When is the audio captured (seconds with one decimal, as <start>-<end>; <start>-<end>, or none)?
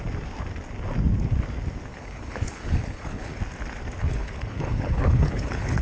0.0-1.9; 3.4-4.0